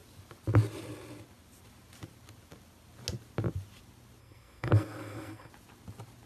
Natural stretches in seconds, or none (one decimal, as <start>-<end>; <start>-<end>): 0.0-4.2; 5.5-6.3